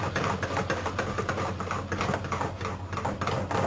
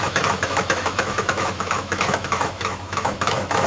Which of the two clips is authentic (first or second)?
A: first